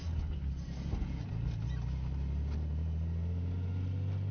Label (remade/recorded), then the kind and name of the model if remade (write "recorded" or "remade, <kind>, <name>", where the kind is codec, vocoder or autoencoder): recorded